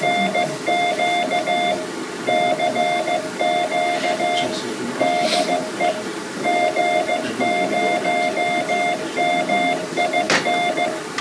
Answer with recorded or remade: recorded